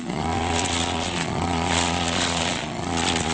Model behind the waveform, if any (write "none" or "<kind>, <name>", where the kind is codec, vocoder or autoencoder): vocoder, Vocos